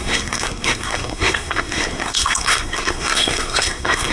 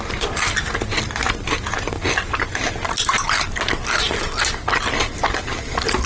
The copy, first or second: first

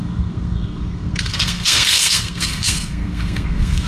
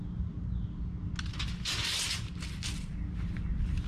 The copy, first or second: first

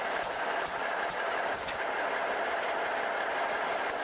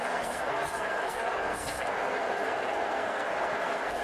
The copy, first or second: second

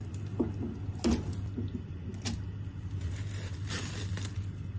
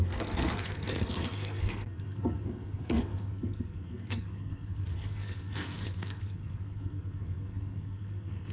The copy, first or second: second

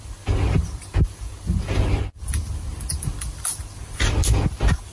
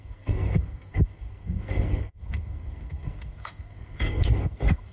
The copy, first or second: second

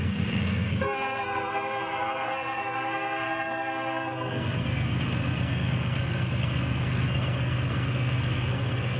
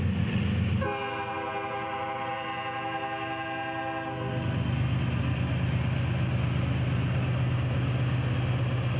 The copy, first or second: first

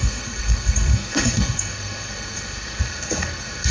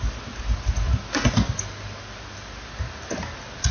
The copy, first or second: first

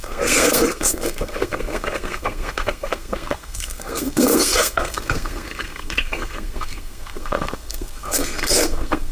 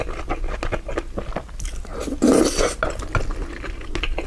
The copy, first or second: first